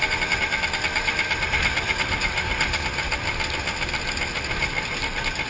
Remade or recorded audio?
recorded